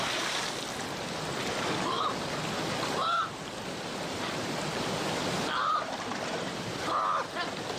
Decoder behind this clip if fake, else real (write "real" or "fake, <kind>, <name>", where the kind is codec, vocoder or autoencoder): fake, vocoder, BigVGAN v2